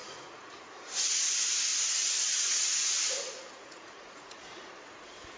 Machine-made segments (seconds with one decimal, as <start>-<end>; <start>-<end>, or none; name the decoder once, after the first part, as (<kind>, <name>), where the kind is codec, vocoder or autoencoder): 0.0-0.7 (vocoder, Vocos); 1.7-4.9